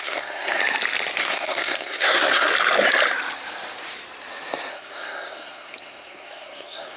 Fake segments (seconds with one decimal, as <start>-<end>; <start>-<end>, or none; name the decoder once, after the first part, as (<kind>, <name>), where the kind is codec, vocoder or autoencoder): 0.0-0.6 (codec, SNAC); 1.2-2.5; 4.7-7.0

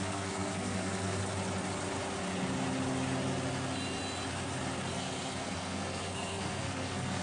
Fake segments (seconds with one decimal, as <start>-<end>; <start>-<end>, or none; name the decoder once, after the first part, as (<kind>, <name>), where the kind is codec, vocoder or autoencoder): 0.0-1.2 (codec, SNAC); 4.9-7.2

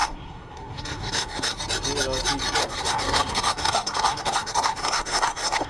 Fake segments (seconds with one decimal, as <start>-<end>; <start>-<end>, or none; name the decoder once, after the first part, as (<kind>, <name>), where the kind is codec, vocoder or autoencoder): 0.0-1.6 (codec, SNAC); 2.6-5.7

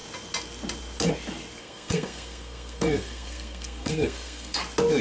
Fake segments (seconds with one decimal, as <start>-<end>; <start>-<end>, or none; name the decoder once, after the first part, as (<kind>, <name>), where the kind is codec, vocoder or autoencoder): 1.6-4.6 (codec, SNAC)

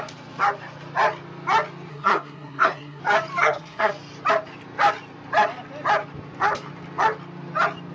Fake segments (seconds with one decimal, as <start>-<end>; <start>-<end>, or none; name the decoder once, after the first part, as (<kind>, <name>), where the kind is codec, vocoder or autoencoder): 1.9-3.0 (codec, SNAC); 3.4-3.9

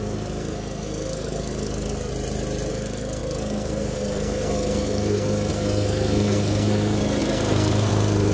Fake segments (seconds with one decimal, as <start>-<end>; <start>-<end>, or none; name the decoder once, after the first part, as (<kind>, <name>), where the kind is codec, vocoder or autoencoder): 0.0-2.1 (codec, SNAC); 2.7-8.3